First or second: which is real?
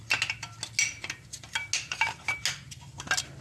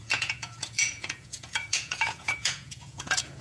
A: first